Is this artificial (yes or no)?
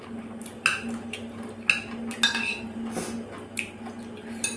no